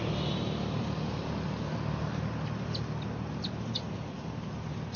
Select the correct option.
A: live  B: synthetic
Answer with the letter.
A